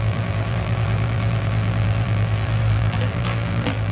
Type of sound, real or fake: fake